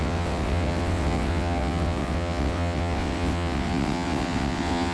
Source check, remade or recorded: remade